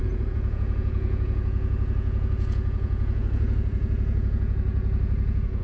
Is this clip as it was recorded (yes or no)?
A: no